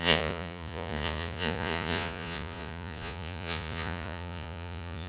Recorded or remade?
remade